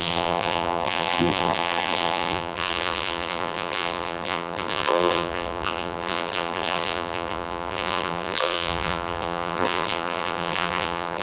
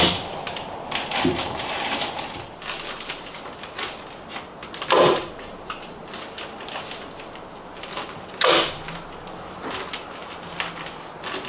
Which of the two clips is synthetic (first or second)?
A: first